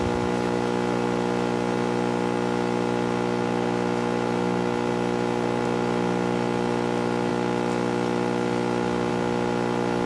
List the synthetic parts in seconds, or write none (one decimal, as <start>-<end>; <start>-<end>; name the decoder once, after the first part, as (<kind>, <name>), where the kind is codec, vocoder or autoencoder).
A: none